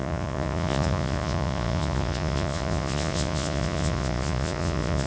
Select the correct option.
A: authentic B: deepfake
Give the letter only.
B